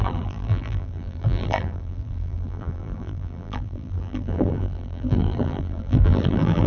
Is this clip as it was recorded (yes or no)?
no